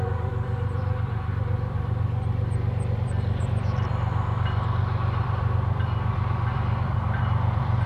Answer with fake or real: fake